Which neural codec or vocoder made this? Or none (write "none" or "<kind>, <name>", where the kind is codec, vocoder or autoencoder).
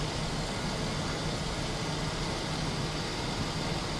none